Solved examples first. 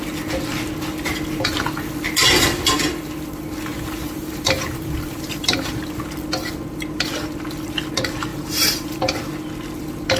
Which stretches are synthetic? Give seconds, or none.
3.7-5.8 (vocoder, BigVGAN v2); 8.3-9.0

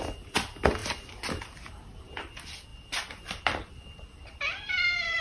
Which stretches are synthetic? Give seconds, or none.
0.8-1.6 (vocoder, BigVGAN v2); 2.7-5.2

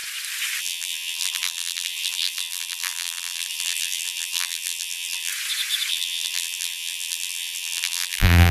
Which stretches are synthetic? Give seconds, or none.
0.6-5.3 (vocoder, BigVGAN v2); 5.9-8.5

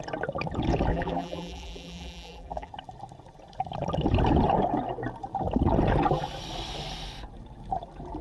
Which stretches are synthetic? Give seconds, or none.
0.9-2.7 (vocoder, BigVGAN v2)

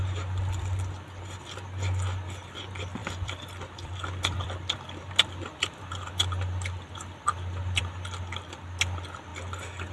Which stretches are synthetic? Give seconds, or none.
3.0-7.8 (vocoder, BigVGAN v2)